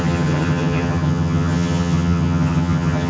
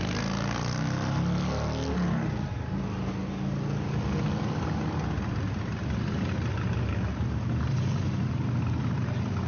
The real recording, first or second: second